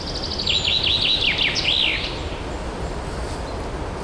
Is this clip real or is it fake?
real